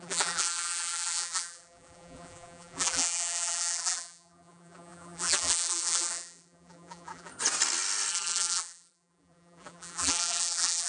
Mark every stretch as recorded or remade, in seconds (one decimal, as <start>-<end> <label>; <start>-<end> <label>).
0.0-7.3 remade; 7.3-8.1 recorded; 8.1-10.9 remade